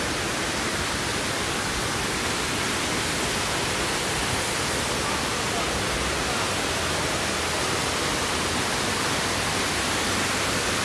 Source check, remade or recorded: recorded